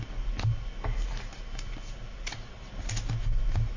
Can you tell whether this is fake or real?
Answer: real